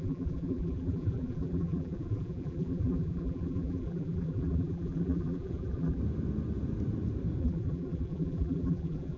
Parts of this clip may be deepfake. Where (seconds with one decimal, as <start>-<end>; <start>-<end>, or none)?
0.0-6.0; 7.4-9.2